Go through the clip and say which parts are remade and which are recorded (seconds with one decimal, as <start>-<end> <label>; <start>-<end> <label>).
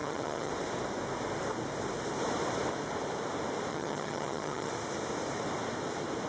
0.0-0.5 remade; 0.5-3.7 recorded; 3.7-4.7 remade; 4.7-6.3 recorded